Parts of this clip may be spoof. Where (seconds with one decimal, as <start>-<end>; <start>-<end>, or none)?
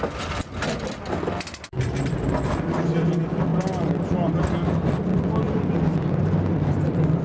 none